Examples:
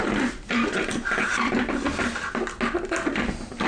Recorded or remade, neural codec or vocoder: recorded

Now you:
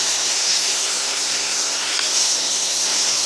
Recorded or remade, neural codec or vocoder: remade, codec, SNAC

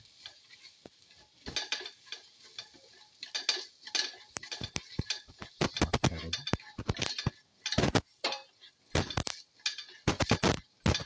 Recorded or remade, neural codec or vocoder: recorded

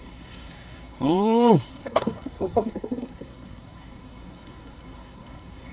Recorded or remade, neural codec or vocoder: remade, codec, SNAC